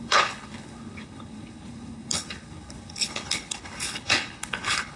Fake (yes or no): yes